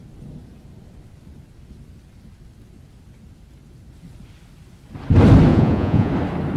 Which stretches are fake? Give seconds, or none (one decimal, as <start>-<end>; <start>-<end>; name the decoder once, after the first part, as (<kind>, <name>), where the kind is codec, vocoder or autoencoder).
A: 5.5-6.1 (vocoder, Vocos)